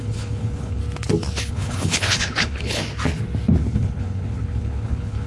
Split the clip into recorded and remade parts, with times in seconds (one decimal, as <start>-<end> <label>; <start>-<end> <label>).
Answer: 0.0-0.8 remade; 0.8-1.5 recorded; 1.5-2.8 remade; 2.8-3.6 recorded; 3.6-5.3 remade